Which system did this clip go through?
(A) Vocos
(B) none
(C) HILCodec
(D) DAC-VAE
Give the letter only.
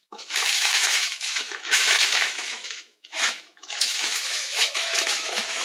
D